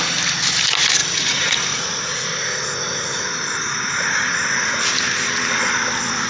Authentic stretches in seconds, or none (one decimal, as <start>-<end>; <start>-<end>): 0.0-1.0; 4.8-6.3